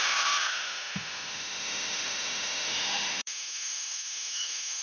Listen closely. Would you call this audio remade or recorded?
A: remade